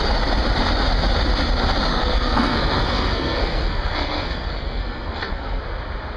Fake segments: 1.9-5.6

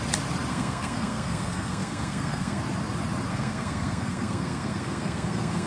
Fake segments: 0.5-2.6; 3.3-5.7

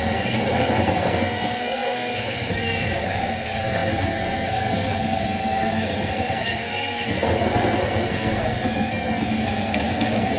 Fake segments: 0.0-10.4

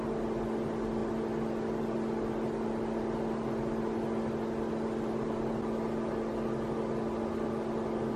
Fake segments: none

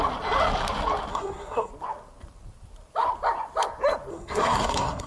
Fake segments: 1.1-1.7; 4.1-5.1

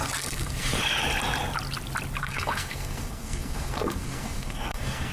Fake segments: 0.0-0.7; 2.2-5.1